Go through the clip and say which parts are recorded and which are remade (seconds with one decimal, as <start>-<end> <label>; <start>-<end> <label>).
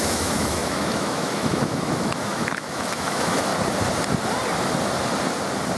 0.0-3.5 remade; 3.5-5.8 recorded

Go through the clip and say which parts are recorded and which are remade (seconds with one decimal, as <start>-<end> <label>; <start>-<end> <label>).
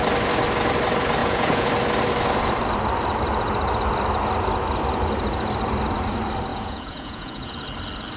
0.0-1.2 recorded; 1.2-1.7 remade; 1.7-6.5 recorded; 6.5-7.5 remade; 7.5-8.2 recorded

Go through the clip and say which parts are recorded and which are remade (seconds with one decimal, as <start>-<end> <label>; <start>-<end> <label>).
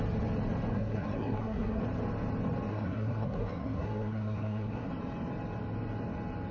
0.0-0.7 recorded; 0.7-1.8 remade; 1.8-2.7 recorded; 2.7-4.9 remade; 4.9-6.5 recorded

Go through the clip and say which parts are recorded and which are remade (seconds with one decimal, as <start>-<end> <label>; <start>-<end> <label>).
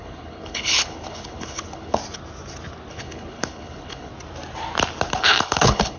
0.0-2.0 remade; 2.0-2.9 recorded; 2.9-4.1 remade; 4.1-5.1 recorded; 5.1-6.0 remade